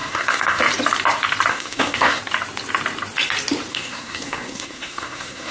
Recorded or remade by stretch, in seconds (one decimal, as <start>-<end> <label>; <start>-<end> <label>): 0.0-0.6 remade; 0.6-1.5 recorded; 1.5-2.2 remade; 2.2-3.7 recorded; 3.7-5.5 remade